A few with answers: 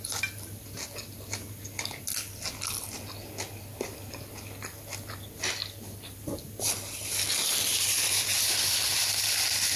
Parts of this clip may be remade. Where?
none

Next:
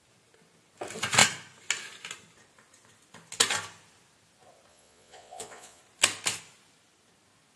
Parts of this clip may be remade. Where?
4.7-5.8 (vocoder, Vocos)

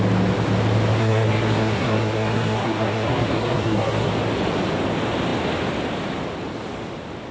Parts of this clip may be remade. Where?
1.0-4.1 (codec, SNAC)

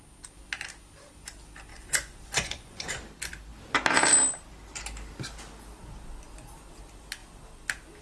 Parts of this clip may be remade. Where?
1.7-2.9 (vocoder, Vocos)

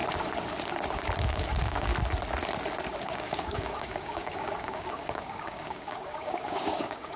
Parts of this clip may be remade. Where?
1.2-1.9 (codec, DAC); 3.0-7.2

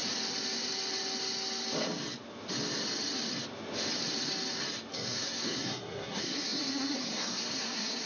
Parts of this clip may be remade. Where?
4.9-8.1 (codec, SNAC)

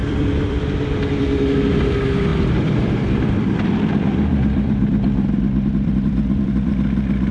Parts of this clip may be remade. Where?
0.0-0.6 (vocoder, BigVGAN v2); 2.3-6.7